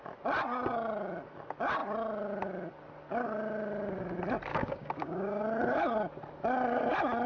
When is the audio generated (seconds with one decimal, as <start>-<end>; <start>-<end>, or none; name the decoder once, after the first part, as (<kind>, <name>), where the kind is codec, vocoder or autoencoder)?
4.5-5.4 (codec, DAC)

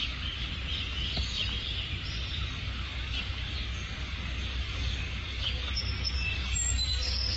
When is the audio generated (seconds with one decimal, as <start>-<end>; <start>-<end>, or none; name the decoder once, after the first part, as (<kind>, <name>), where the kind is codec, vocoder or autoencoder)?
0.0-0.5 (codec, DAC); 2.5-7.4

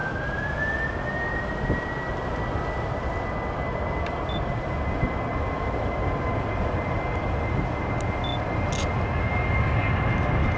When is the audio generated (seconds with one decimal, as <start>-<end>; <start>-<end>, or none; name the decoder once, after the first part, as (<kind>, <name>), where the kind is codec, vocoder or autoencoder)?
none